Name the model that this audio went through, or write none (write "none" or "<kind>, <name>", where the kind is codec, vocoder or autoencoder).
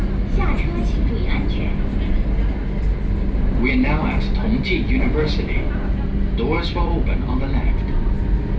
none